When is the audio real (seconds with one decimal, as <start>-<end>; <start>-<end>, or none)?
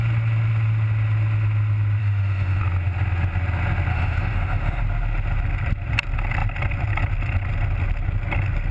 0.0-2.0; 2.6-3.9; 4.8-8.7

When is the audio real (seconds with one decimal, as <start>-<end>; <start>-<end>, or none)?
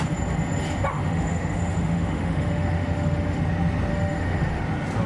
0.0-0.9; 3.4-3.9; 4.6-5.1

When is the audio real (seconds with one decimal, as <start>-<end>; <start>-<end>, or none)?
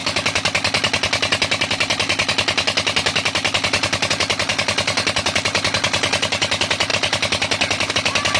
0.0-8.4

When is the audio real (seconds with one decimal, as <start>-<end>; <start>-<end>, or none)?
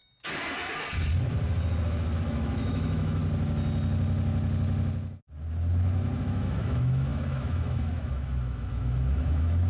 0.0-2.2; 3.2-6.2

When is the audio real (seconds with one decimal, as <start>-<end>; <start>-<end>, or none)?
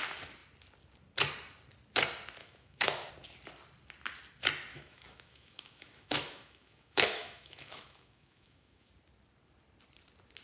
0.0-2.4; 3.1-4.7; 8.9-10.4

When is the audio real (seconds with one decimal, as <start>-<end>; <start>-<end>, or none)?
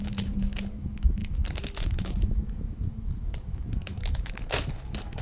none